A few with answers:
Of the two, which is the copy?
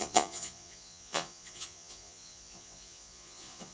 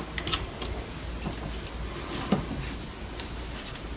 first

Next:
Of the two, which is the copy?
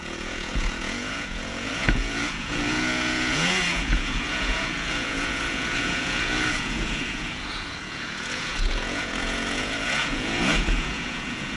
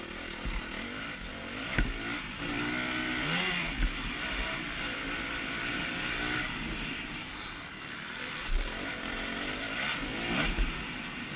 first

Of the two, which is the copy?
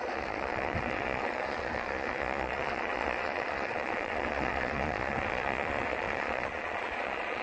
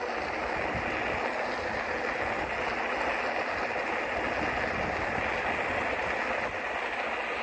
first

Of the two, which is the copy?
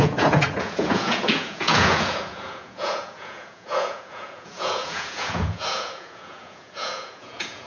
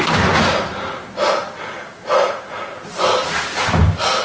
first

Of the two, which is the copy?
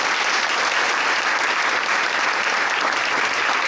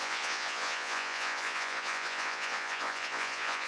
second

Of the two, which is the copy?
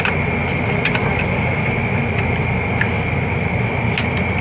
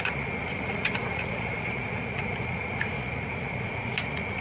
second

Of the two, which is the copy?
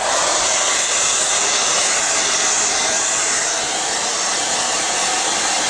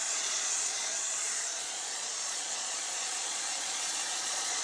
second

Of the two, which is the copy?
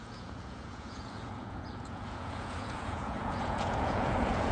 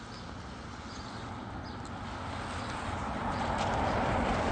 first